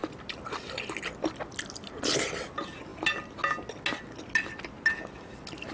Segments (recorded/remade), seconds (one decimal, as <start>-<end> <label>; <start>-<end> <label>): 0.0-5.7 recorded